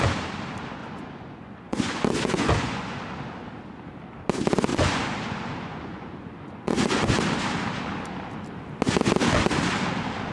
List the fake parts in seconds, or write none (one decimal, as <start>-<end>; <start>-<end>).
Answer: 0.8-3.0; 4.7-7.2